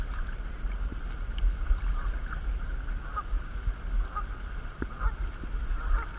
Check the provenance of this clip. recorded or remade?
recorded